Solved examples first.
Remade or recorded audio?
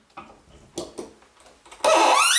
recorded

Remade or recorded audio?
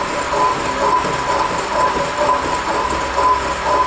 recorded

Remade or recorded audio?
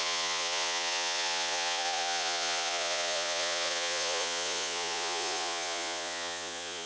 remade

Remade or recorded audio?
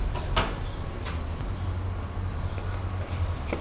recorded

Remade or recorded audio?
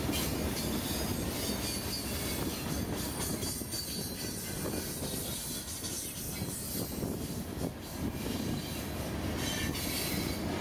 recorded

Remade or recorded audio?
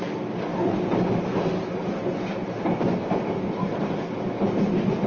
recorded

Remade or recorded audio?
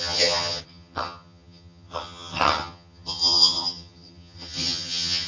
remade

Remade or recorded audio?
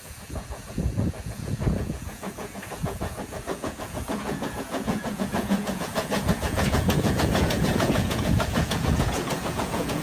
remade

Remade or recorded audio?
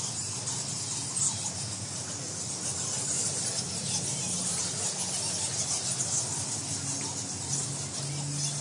recorded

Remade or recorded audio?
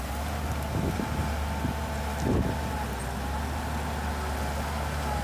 recorded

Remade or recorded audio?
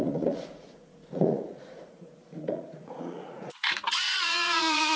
remade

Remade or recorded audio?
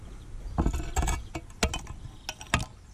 recorded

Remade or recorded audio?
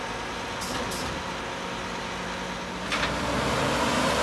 recorded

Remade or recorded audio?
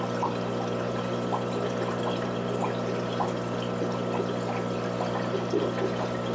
recorded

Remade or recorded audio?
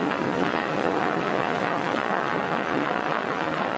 remade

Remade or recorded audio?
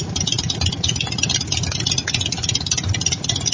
recorded